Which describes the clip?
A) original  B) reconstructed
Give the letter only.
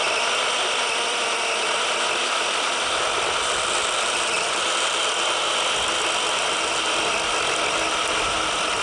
A